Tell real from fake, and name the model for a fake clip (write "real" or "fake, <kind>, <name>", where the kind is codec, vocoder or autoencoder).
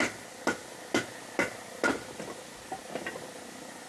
real